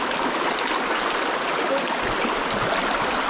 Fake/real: real